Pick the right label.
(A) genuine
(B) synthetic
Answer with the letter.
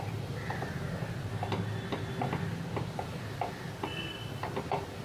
B